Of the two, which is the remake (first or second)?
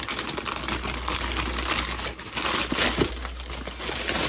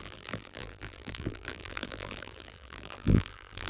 second